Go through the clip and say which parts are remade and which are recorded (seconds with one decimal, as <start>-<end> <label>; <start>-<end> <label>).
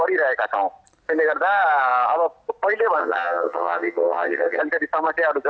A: 0.0-3.0 recorded; 3.0-4.6 remade; 4.6-5.5 recorded